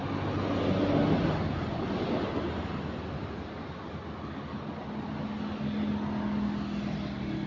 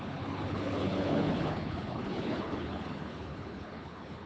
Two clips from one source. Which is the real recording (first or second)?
first